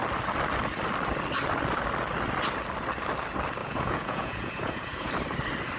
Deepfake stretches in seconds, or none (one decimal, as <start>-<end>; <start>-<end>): 3.6-5.1